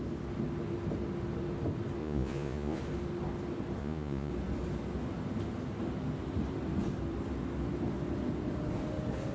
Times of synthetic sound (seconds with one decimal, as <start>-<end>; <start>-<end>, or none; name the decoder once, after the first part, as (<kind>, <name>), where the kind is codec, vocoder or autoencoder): 2.0-2.8 (vocoder, Vocos); 3.8-4.3